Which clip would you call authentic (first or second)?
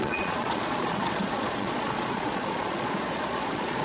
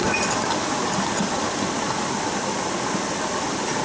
second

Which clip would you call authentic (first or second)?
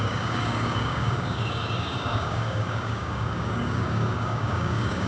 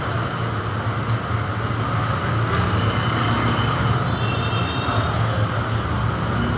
second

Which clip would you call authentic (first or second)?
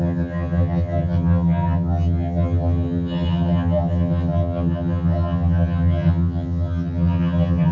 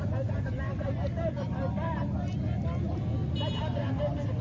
second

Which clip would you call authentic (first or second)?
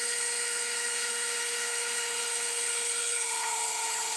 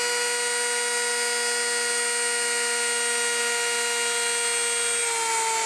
second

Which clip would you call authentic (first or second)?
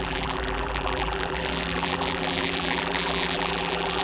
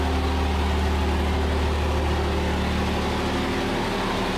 second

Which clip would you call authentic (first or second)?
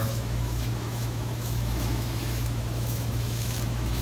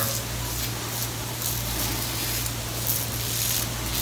second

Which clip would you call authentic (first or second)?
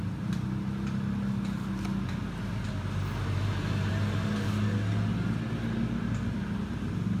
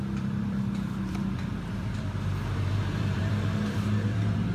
first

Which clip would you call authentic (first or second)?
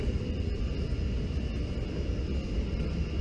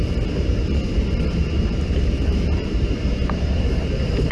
first